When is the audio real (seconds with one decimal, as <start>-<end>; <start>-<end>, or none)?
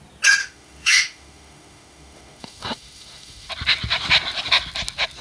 0.0-0.4; 3.5-5.2